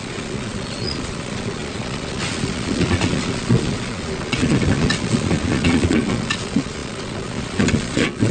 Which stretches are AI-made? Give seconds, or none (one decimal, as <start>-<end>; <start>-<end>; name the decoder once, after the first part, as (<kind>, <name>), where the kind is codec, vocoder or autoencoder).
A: 0.0-8.3 (vocoder, Vocos)